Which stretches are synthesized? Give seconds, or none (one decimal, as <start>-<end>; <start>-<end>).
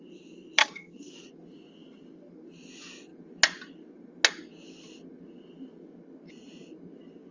0.6-1.1